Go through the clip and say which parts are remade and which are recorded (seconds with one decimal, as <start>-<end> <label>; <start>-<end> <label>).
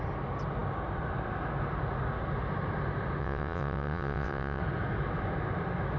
0.0-3.2 recorded; 3.2-4.6 remade; 4.6-6.0 recorded